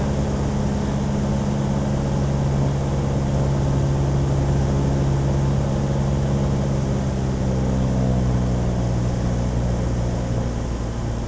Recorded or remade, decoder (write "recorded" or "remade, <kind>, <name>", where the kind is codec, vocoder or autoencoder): recorded